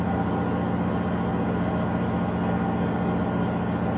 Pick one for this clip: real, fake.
real